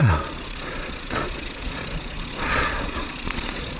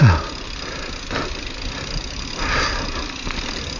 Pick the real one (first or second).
second